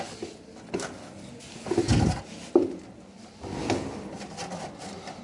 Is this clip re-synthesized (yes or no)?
no